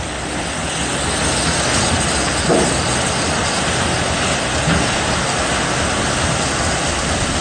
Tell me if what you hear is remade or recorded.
recorded